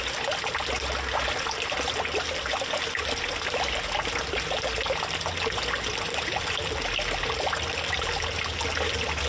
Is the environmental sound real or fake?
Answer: real